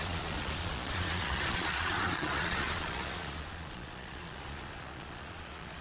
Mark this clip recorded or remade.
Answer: remade